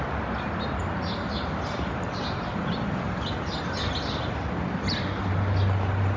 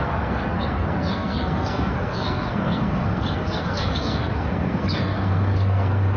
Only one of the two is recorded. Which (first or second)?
first